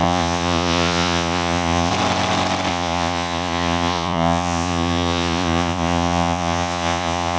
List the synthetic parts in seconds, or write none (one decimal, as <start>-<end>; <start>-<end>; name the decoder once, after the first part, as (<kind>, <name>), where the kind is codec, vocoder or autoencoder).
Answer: 0.0-1.9 (vocoder, Vocos); 2.7-7.4